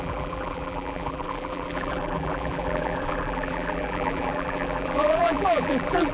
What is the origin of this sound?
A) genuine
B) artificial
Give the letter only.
B